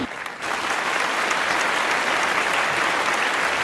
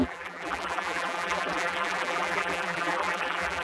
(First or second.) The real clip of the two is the first